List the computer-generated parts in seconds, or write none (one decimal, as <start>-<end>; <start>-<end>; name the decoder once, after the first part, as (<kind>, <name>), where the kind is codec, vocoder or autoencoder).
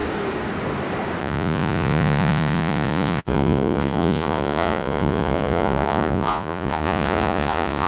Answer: 1.2-7.9 (vocoder, Vocos)